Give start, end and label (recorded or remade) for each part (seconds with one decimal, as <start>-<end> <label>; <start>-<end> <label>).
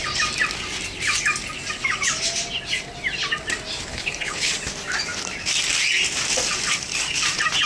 0.0-3.9 recorded; 3.9-4.5 remade; 4.5-7.7 recorded